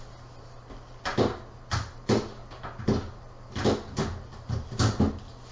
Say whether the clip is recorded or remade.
recorded